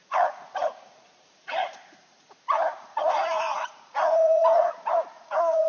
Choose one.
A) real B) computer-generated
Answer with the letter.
B